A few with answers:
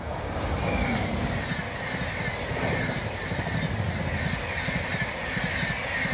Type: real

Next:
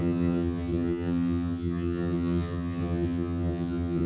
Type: fake